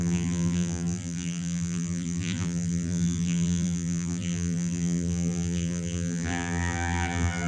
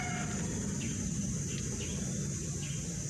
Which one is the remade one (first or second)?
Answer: first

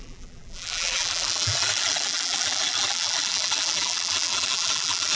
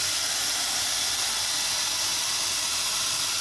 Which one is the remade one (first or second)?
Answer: first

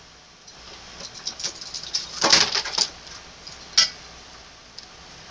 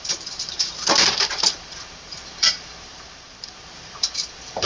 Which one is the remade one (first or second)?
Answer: second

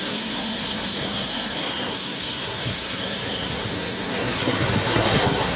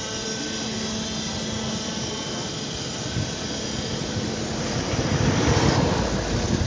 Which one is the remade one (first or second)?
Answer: first